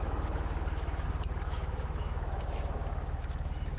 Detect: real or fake fake